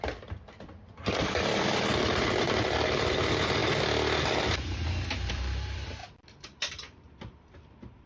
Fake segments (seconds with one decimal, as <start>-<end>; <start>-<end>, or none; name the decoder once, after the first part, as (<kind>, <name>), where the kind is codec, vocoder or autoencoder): 0.0-3.6 (vocoder, BigVGAN v2); 5.3-8.1